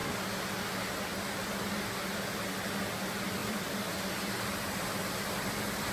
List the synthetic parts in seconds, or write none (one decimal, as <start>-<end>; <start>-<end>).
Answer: 3.4-5.9